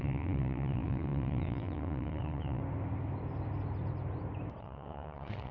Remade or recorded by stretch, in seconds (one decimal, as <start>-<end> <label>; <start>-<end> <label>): 0.0-2.6 remade; 2.6-4.6 recorded; 4.6-5.5 remade